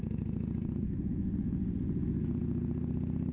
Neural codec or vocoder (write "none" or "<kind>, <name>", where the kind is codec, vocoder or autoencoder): vocoder, Vocos